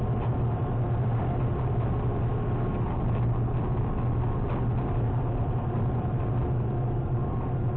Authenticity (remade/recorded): recorded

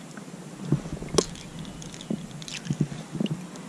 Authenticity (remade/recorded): recorded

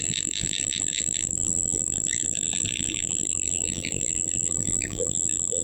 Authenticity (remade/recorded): remade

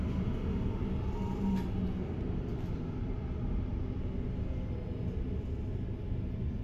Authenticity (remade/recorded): recorded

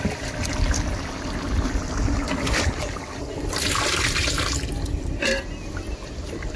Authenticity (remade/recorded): recorded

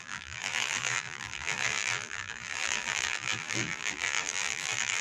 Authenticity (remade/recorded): remade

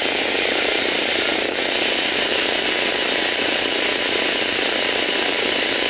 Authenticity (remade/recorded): remade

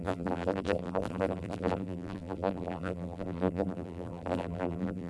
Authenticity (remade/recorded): remade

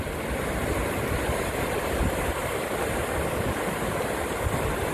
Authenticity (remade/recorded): recorded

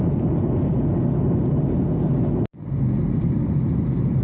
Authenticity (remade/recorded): recorded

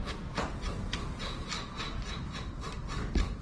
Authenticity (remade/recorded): recorded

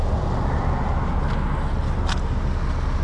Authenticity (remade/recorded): recorded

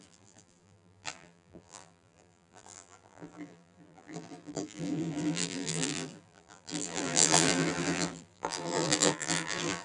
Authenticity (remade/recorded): remade